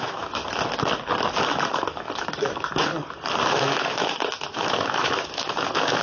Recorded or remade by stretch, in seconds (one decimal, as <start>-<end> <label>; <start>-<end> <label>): 0.0-0.4 remade; 0.4-1.7 recorded; 1.7-2.9 remade; 2.9-3.5 recorded; 3.5-6.0 remade